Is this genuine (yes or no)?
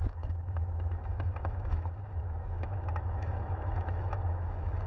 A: no